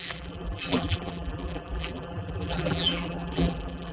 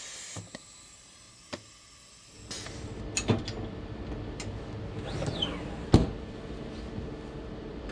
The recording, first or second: second